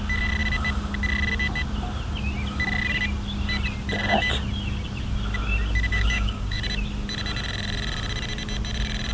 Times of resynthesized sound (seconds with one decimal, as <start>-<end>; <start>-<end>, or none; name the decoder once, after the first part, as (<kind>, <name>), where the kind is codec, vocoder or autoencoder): 5.9-6.6 (codec, DAC)